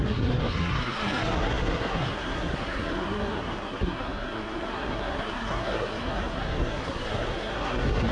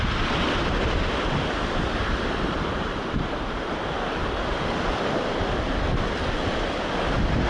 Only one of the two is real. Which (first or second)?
second